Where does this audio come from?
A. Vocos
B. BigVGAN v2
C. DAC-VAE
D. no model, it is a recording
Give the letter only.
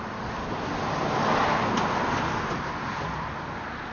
D